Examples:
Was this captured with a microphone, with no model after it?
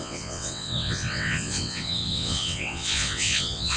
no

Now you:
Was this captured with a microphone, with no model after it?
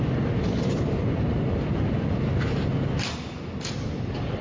yes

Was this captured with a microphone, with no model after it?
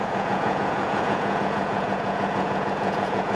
no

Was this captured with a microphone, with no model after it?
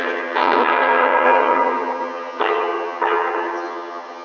no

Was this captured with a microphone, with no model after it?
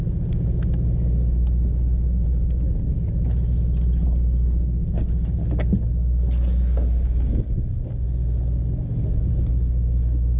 yes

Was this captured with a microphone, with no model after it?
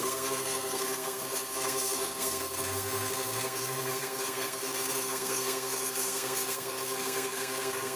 no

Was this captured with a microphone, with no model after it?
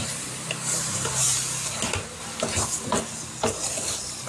yes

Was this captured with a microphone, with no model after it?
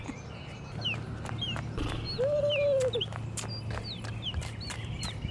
yes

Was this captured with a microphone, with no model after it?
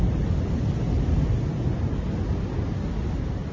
yes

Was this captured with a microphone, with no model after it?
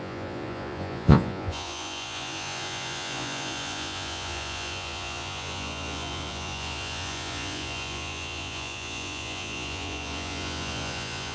no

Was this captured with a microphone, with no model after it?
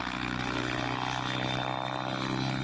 yes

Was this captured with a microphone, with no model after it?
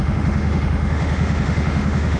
no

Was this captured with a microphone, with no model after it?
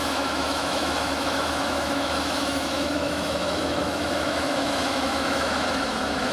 no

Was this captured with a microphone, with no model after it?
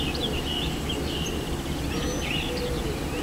yes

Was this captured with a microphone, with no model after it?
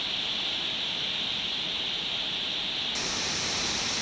yes